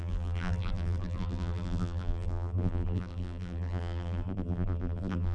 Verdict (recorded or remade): remade